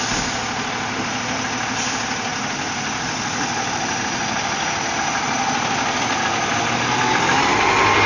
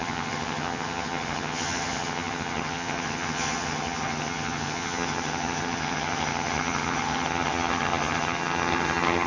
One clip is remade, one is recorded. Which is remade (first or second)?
second